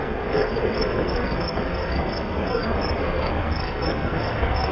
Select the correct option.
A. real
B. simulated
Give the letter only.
B